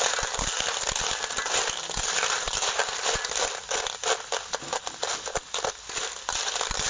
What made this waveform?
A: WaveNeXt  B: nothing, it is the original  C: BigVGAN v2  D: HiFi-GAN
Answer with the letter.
B